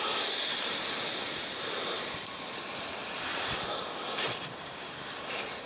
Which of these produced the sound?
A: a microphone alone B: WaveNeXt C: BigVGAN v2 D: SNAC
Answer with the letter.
A